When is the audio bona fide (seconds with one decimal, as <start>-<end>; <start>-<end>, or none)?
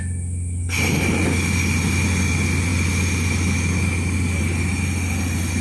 0.0-5.6